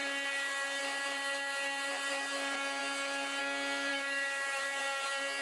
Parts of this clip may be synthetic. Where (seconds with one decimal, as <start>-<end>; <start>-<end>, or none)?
3.9-4.8